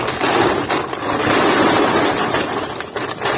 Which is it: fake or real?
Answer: real